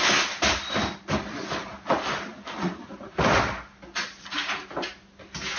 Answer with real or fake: real